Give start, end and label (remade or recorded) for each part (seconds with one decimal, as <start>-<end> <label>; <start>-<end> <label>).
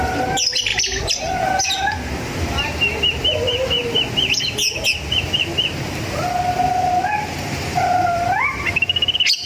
0.0-9.5 recorded